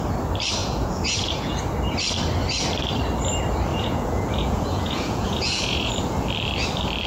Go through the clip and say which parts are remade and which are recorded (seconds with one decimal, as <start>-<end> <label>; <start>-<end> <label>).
0.0-0.6 recorded; 0.6-1.6 remade; 1.6-3.7 recorded; 3.7-5.9 remade; 5.9-7.1 recorded